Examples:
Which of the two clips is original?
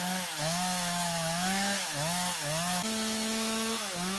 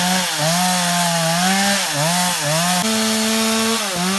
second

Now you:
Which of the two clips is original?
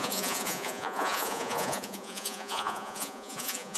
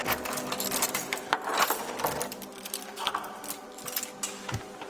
second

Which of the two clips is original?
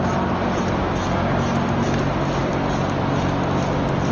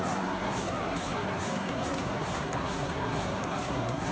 first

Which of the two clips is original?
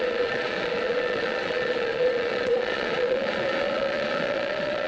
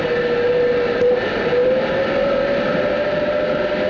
second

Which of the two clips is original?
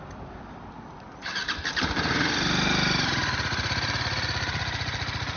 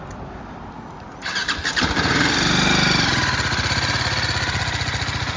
second